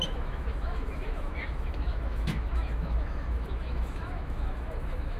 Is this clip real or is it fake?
fake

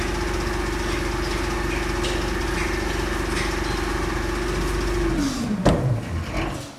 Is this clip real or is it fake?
real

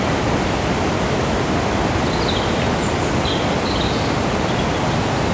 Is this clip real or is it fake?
real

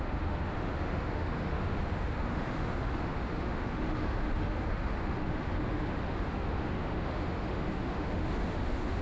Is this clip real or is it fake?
fake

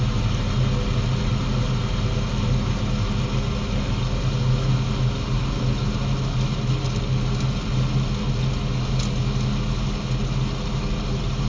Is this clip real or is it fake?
real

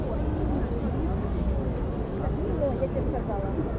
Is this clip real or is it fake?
real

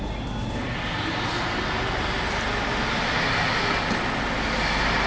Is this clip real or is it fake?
real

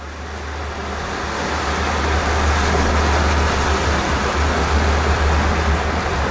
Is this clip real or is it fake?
real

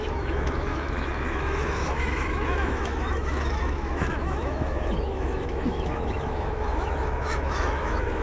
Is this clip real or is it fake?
fake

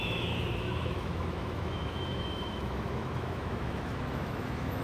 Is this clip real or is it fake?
fake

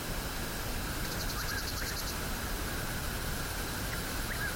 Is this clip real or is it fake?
real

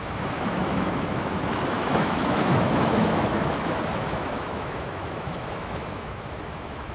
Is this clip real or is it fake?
fake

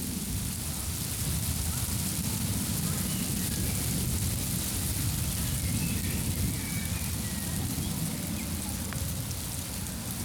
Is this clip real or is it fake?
real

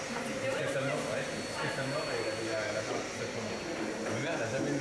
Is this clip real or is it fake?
real